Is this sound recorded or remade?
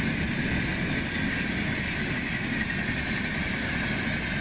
recorded